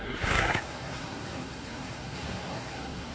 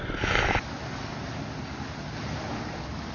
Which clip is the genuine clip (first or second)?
second